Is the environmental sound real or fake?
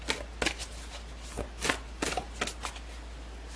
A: real